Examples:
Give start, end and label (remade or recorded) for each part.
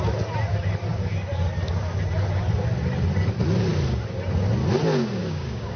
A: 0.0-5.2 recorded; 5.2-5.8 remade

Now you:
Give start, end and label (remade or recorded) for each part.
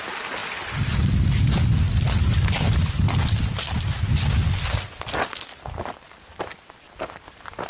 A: 0.0-7.7 recorded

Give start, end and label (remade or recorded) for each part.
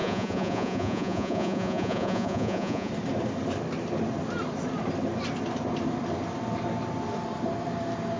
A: 0.0-2.9 remade; 2.9-8.2 recorded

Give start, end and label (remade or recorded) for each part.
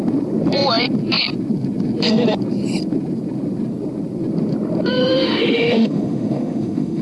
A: 0.0-5.0 recorded; 5.0-7.0 remade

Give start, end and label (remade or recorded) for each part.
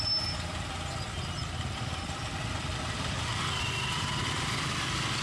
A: 0.0-1.4 recorded; 1.4-4.2 remade; 4.2-5.2 recorded